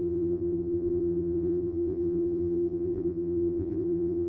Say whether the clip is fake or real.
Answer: fake